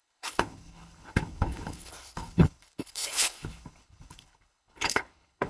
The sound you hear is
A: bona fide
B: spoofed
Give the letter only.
B